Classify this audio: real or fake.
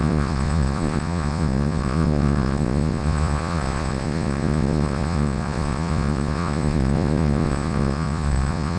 fake